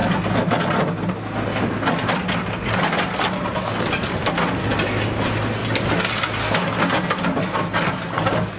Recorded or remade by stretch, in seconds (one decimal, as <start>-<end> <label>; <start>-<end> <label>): 0.0-8.6 recorded